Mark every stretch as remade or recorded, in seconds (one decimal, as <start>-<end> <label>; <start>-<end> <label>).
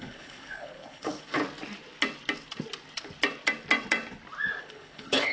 0.0-1.4 remade; 1.4-4.6 recorded; 4.6-5.3 remade